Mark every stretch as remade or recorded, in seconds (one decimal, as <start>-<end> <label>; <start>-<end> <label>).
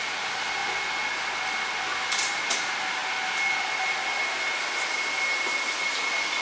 0.0-6.4 recorded